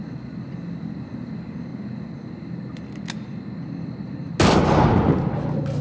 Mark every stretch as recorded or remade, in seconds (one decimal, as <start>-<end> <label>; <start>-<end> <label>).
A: 0.0-5.8 recorded